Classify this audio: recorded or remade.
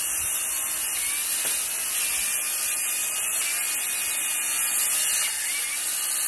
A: recorded